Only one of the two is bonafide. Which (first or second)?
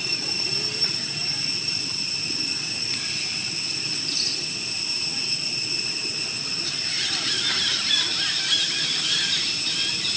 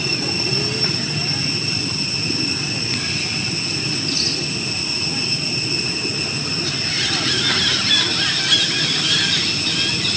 second